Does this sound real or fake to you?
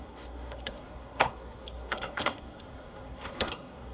fake